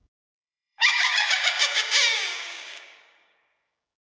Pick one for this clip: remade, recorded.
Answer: remade